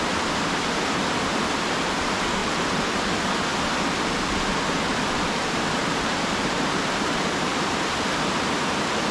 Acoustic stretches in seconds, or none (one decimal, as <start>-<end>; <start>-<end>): 0.0-2.4; 3.0-5.8; 7.5-9.1